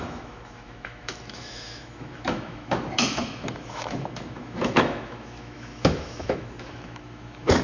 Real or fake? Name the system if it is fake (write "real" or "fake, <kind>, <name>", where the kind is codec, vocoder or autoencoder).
fake, autoencoder, DAC-VAE